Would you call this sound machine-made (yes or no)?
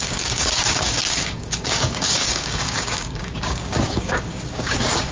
yes